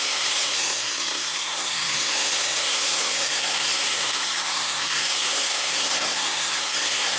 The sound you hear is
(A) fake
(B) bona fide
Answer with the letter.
A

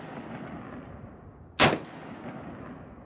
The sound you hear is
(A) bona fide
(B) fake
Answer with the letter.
A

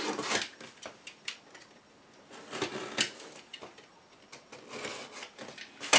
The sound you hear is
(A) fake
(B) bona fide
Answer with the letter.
B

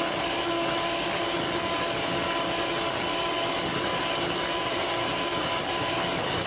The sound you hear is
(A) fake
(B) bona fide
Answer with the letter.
B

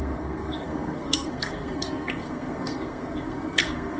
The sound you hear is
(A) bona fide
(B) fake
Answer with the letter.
B